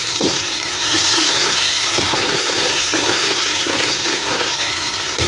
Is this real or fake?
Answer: fake